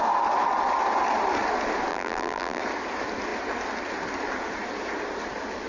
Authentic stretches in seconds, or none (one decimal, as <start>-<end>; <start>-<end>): 0.0-1.9; 2.6-5.7